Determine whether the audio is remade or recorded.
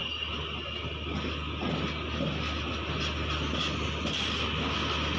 recorded